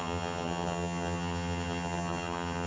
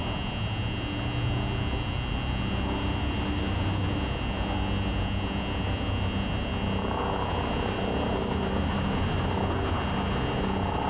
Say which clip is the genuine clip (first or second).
second